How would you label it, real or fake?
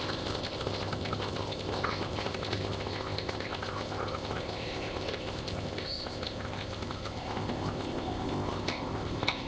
fake